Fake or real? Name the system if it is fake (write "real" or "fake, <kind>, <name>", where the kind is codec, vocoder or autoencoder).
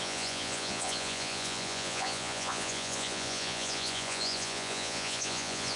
fake, vocoder, Vocos